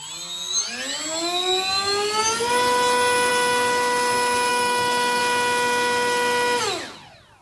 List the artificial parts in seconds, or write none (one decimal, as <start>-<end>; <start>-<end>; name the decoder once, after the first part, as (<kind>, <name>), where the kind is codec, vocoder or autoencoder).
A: 4.5-5.2 (autoencoder, DAC-VAE)